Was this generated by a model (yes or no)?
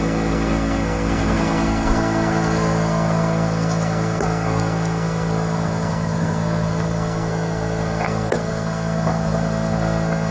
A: yes